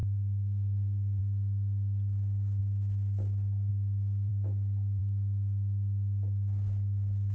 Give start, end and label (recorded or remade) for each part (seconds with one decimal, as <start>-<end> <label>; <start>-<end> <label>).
0.0-1.2 remade; 1.2-7.3 recorded